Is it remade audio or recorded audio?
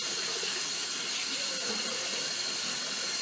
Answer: recorded